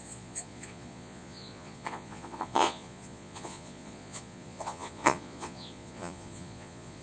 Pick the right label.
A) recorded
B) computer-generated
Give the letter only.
B